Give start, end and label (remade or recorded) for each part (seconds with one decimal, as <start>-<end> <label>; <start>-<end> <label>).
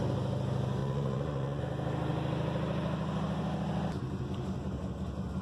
0.0-0.8 recorded; 0.8-1.6 remade; 1.6-5.4 recorded